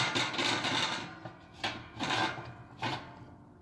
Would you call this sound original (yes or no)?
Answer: yes